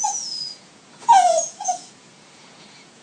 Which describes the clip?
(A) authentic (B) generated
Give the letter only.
B